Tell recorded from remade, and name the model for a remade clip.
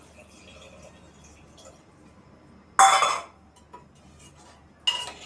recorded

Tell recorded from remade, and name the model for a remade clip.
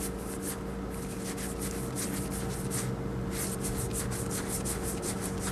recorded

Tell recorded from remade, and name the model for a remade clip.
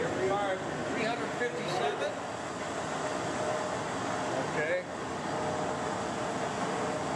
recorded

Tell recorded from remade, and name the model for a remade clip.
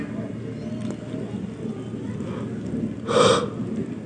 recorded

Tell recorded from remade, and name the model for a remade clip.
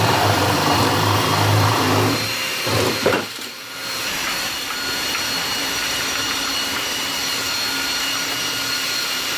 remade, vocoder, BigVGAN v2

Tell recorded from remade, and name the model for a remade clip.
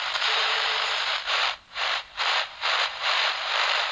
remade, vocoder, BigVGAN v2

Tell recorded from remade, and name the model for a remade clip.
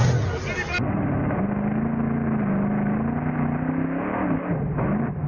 recorded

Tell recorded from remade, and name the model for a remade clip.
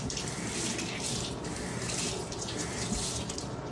recorded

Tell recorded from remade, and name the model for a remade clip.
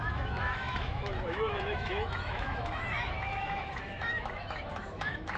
remade, autoencoder, DAC-VAE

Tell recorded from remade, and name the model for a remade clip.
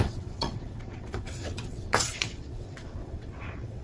remade, vocoder, WaveNeXt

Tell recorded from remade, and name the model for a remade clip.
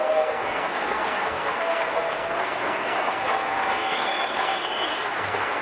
remade, codec, SNAC